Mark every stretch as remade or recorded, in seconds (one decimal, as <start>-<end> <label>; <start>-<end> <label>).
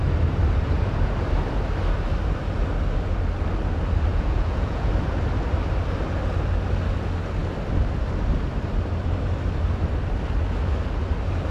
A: 0.0-4.1 recorded; 4.1-4.9 remade; 4.9-11.5 recorded